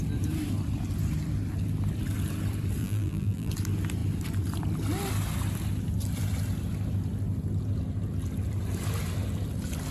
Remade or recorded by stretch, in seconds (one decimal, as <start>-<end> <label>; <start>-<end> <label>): 0.0-2.8 recorded; 2.8-3.5 remade; 3.5-9.9 recorded